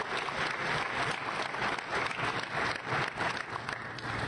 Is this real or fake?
real